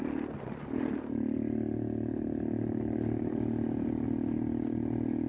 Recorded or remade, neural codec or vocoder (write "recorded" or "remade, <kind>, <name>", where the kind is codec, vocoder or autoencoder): recorded